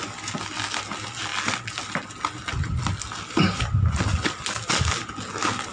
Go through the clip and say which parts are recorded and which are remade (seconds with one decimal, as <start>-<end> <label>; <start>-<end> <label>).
0.0-5.7 recorded